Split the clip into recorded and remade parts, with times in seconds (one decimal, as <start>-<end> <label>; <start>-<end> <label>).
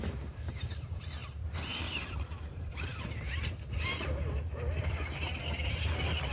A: 0.0-2.9 remade; 2.9-6.3 recorded